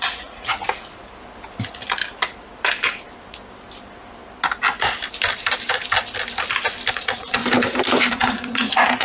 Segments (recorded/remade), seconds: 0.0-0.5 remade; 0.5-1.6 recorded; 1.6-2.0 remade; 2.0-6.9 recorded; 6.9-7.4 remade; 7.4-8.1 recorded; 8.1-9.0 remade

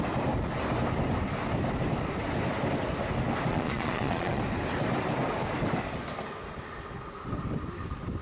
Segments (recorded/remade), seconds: 0.0-3.5 recorded; 3.5-4.4 remade; 4.4-8.2 recorded